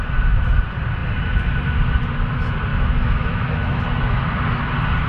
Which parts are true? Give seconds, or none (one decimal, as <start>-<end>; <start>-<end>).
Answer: 0.0-2.7; 3.8-5.1